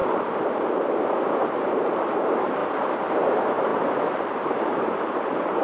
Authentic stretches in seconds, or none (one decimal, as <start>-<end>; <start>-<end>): 2.6-3.1